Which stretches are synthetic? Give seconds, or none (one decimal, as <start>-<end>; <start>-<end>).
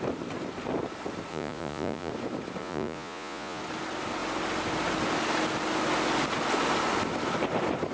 1.3-2.1; 2.6-3.6